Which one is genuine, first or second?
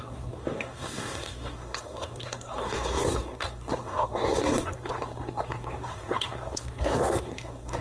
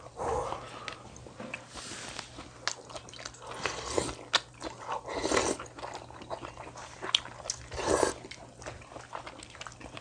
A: second